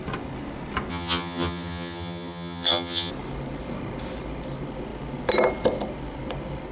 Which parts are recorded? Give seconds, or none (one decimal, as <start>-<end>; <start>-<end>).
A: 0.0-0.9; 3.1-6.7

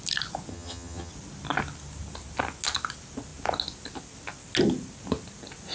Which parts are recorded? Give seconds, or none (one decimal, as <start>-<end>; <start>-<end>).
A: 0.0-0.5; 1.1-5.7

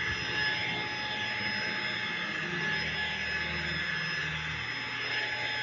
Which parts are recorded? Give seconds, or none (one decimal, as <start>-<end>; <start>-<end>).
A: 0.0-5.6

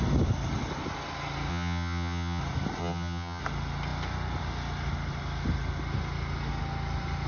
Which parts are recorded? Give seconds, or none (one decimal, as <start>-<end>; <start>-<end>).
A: 0.0-1.5; 2.4-2.8; 3.4-7.3

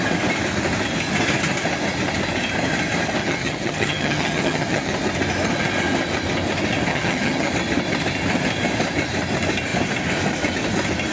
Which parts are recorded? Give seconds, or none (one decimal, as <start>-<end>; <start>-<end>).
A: 0.0-3.2; 4.9-6.9; 7.5-11.1